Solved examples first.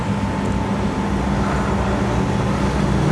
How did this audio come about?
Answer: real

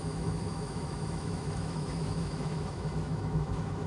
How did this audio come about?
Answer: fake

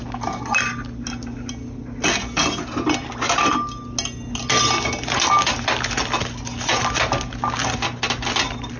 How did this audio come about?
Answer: real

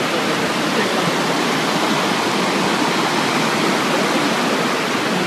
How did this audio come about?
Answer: real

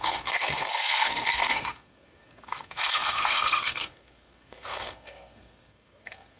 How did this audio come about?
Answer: fake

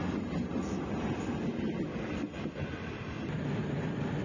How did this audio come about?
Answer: real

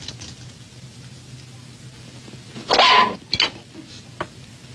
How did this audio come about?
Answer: real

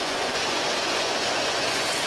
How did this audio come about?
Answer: fake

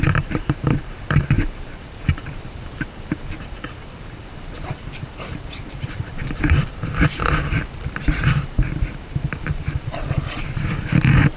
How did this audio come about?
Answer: fake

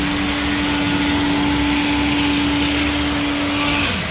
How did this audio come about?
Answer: real